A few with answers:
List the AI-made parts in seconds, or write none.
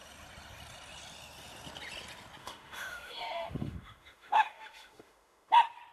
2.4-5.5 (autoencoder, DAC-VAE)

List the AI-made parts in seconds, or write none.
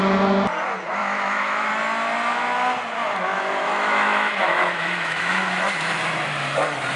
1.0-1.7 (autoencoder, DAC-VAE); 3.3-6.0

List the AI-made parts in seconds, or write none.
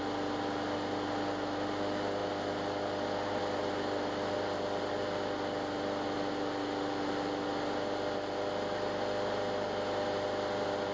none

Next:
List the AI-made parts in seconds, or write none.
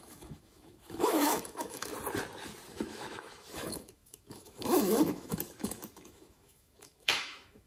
0.0-1.9 (autoencoder, DAC-VAE); 2.7-7.7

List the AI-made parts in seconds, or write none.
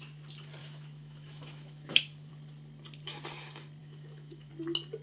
0.6-2.3 (autoencoder, DAC-VAE); 3.8-4.5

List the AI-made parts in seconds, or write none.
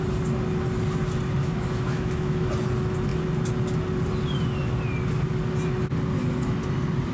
1.4-2.5 (autoencoder, DAC-VAE)